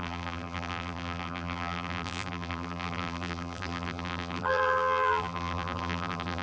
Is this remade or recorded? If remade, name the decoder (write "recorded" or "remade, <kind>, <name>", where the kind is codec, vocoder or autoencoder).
remade, vocoder, BigVGAN v2